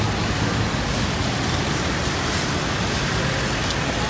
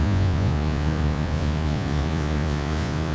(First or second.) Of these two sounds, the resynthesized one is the second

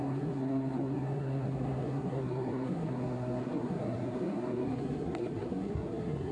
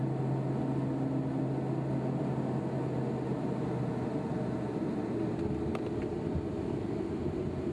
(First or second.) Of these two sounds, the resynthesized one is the first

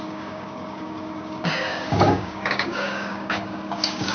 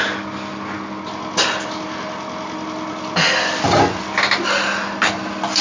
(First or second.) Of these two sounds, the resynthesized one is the first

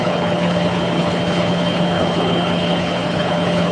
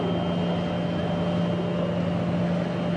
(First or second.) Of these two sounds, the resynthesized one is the first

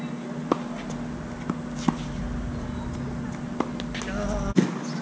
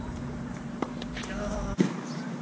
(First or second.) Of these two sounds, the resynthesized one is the second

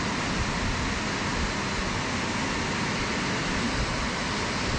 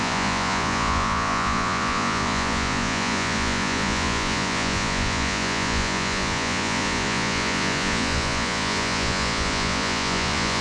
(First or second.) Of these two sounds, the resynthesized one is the second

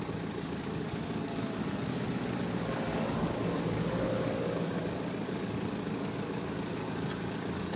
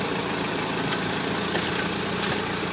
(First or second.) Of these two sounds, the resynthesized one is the first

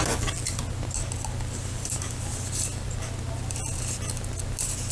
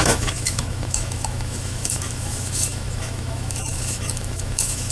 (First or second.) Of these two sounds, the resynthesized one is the second